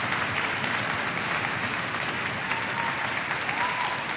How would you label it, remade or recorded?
recorded